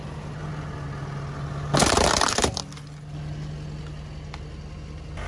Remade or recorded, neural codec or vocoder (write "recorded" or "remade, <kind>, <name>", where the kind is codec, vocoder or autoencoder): recorded